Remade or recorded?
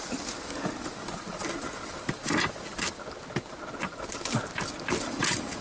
recorded